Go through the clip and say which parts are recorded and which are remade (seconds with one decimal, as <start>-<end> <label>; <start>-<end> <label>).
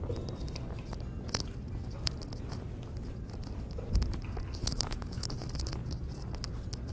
0.0-4.6 recorded; 4.6-5.3 remade; 5.3-6.9 recorded